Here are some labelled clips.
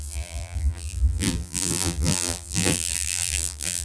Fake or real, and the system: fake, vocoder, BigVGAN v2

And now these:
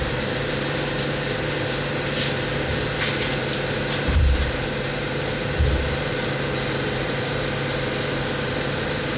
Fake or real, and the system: fake, vocoder, BigVGAN v2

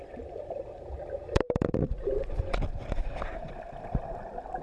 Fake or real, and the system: fake, vocoder, BigVGAN v2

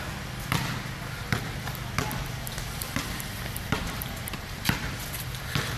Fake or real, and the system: fake, vocoder, BigVGAN v2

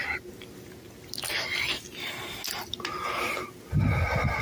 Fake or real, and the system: real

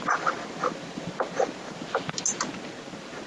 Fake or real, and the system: real